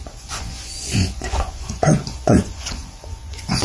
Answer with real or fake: fake